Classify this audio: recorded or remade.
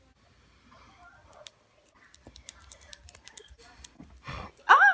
recorded